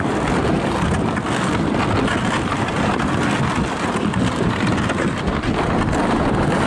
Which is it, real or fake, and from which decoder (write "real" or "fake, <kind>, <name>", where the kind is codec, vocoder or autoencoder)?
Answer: real